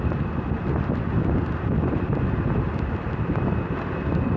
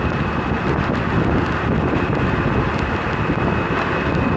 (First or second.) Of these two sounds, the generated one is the first